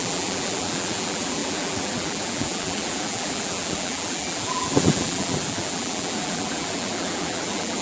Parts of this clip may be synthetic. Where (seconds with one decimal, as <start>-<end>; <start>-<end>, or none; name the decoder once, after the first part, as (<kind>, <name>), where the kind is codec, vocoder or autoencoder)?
0.0-7.8 (vocoder, BigVGAN v2)